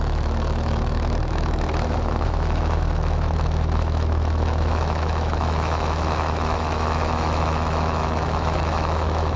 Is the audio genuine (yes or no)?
no